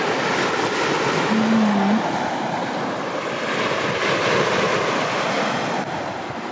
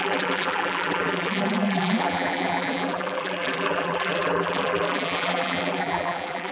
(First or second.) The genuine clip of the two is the first